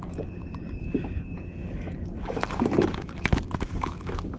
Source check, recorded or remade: remade